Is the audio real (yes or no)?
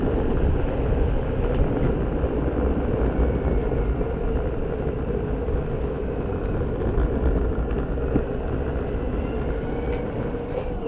yes